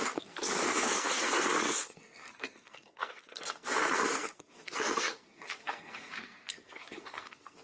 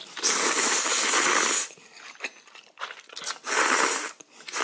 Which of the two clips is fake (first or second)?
first